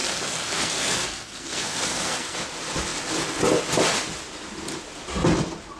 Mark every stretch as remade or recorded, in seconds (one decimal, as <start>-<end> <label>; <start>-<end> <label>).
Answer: 0.0-2.4 remade; 2.4-5.8 recorded